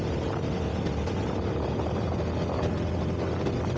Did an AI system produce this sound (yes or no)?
no